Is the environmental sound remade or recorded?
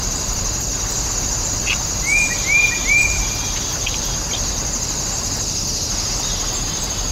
recorded